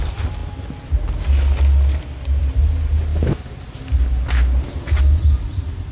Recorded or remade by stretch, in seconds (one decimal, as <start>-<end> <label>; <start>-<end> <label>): 0.0-5.9 recorded